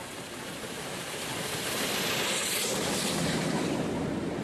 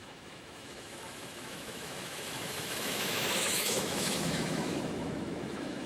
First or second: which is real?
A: first